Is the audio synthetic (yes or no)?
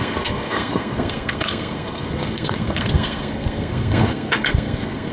yes